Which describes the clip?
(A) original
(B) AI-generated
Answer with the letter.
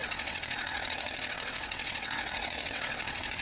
B